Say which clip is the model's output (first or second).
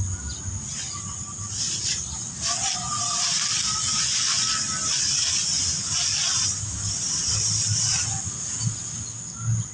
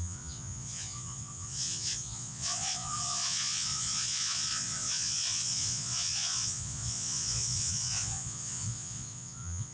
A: second